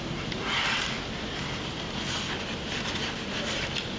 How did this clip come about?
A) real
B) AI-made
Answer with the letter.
A